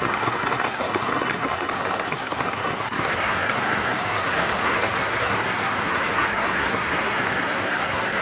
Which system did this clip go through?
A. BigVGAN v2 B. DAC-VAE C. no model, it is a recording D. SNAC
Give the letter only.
D